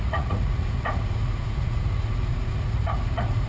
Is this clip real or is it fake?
fake